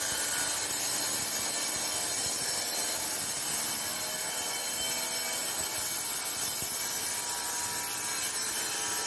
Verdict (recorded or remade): recorded